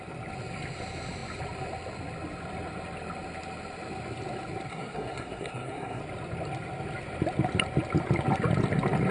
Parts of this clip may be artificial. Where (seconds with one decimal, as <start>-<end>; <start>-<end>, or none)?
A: 4.7-6.0